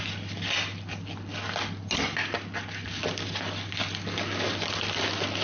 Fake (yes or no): no